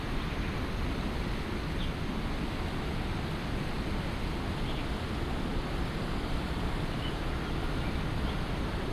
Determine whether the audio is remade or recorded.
recorded